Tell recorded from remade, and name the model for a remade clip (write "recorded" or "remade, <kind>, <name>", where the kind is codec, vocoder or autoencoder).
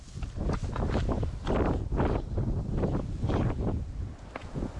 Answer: recorded